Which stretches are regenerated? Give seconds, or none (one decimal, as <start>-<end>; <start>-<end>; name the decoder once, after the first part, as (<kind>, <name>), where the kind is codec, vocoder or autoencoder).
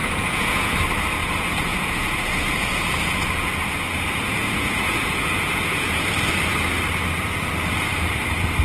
0.0-0.7 (vocoder, Vocos); 1.2-6.0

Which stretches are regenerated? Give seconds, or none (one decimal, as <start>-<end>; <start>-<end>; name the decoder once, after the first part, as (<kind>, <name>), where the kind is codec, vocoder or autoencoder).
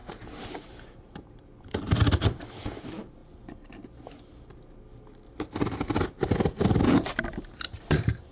0.0-3.2 (vocoder, BigVGAN v2); 7.8-8.3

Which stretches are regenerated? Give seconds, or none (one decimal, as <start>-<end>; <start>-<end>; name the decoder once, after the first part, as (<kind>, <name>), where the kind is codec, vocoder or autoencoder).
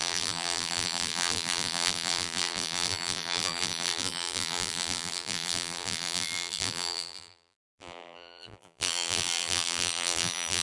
0.0-10.6 (vocoder, BigVGAN v2)